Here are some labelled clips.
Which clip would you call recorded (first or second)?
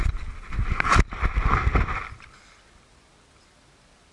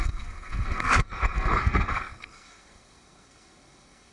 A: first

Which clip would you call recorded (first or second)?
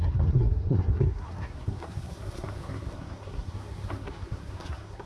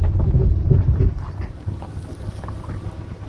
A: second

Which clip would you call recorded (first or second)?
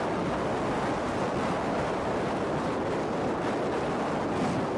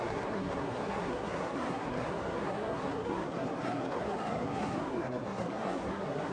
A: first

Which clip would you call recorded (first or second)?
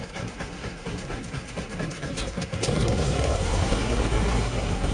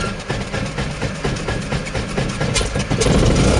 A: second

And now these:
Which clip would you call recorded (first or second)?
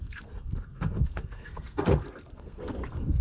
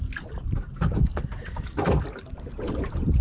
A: second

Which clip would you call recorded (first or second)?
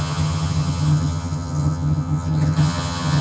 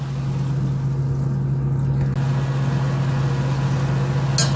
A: second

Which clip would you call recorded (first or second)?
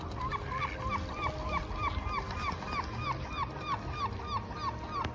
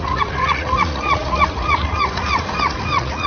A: first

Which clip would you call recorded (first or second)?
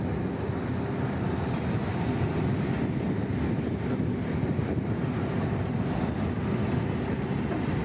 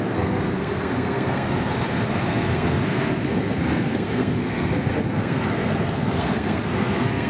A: first